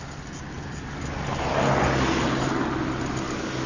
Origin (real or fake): real